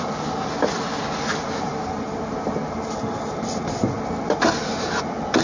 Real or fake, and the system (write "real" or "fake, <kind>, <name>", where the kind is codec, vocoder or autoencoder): real